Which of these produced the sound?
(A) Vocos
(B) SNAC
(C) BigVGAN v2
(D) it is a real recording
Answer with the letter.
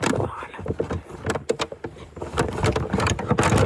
D